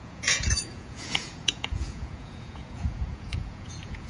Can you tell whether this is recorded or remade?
remade